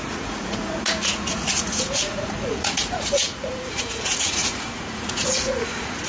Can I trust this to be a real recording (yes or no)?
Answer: no